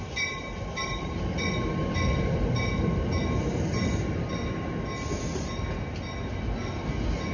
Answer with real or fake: real